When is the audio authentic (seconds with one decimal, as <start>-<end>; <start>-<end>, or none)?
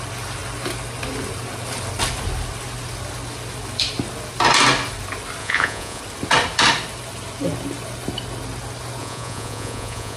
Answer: 0.0-5.4; 6.0-9.0